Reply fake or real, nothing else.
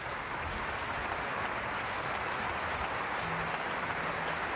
real